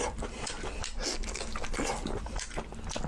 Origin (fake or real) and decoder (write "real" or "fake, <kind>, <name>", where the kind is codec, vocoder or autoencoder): real